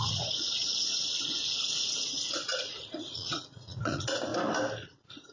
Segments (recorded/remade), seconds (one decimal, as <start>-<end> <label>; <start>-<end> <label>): 0.0-4.3 remade; 4.3-5.3 recorded